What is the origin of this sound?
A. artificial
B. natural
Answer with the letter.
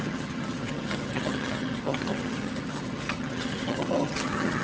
A